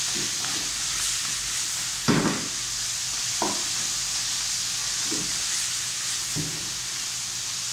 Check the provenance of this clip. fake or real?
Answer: real